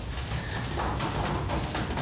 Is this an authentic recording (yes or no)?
yes